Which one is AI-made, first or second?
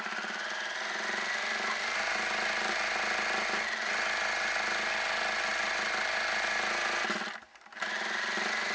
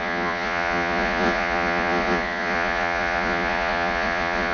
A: second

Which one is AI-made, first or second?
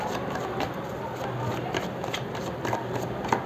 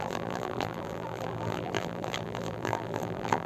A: second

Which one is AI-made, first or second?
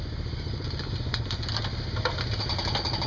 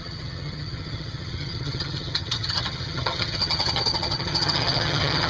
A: second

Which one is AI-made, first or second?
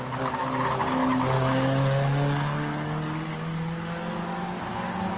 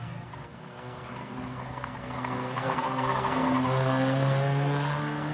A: second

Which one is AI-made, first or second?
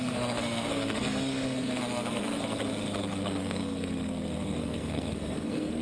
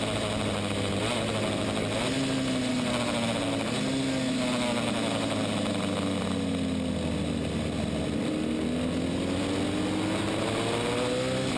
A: first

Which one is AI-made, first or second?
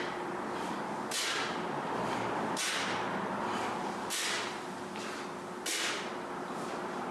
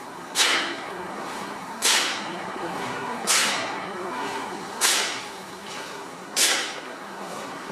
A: second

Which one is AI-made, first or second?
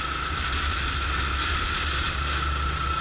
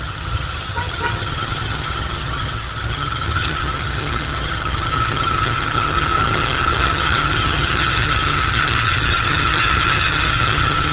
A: second